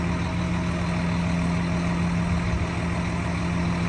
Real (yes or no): yes